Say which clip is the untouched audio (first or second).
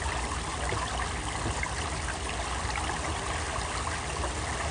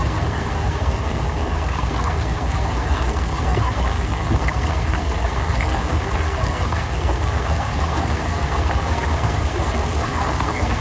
first